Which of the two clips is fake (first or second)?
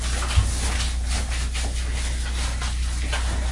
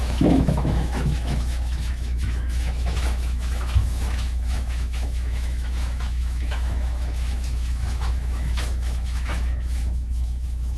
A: second